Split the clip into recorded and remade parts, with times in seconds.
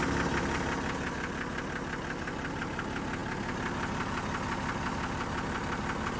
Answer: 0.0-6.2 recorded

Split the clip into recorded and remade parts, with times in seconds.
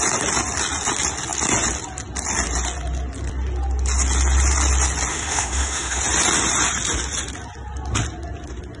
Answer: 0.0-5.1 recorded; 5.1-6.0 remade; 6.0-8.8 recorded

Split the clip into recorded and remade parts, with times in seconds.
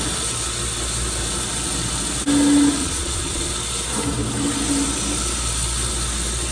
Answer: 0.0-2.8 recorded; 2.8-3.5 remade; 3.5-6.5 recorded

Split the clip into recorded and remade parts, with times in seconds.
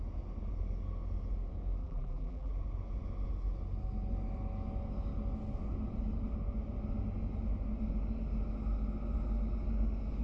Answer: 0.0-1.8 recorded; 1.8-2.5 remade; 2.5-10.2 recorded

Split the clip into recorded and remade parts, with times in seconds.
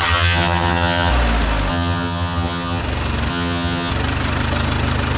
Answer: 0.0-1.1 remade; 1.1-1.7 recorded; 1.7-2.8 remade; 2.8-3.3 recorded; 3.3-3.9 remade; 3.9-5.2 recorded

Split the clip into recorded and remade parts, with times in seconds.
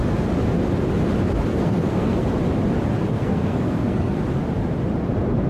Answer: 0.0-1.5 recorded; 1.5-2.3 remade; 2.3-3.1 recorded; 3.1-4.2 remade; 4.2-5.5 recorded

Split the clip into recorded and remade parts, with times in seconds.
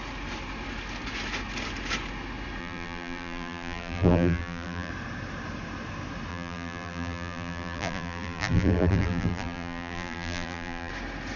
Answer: 0.0-2.6 recorded; 2.6-4.9 remade; 4.9-6.3 recorded; 6.3-10.9 remade; 10.9-11.4 recorded